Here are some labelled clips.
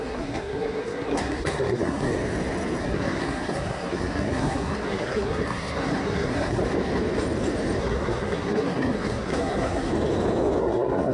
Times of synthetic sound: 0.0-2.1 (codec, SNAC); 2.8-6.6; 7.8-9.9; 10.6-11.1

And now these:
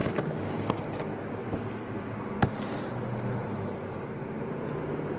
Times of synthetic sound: none

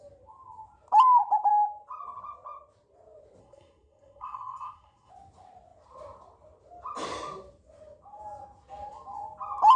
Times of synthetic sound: 3.4-5.1 (codec, SNAC)

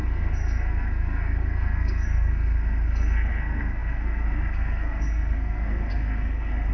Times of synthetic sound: 0.0-6.7 (codec, SNAC)

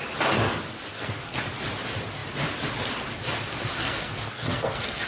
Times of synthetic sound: 0.9-1.4 (codec, SNAC); 3.5-5.1

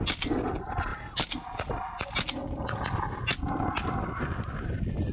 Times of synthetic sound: none

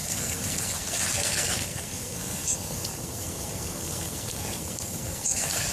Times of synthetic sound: 0.0-5.7 (codec, SNAC)

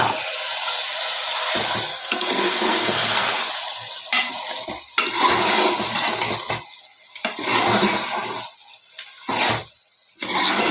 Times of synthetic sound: 1.9-3.5 (codec, SNAC)